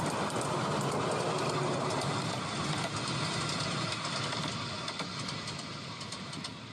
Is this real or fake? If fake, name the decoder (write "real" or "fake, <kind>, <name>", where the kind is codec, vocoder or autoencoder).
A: real